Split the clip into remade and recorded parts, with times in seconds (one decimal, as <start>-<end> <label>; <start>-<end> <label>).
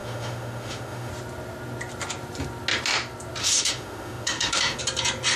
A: 0.0-1.1 remade; 1.1-3.4 recorded; 3.4-4.8 remade; 4.8-5.4 recorded